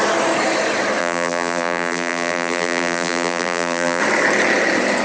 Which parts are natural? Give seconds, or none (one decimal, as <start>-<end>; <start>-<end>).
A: 0.0-1.0; 4.0-5.0